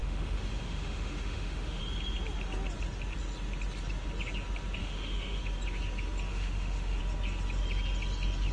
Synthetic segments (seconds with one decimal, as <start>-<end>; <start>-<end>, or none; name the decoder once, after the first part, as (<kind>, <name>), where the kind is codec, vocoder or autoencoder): 0.0-1.8 (autoencoder, DAC-VAE); 4.8-5.4; 6.3-7.0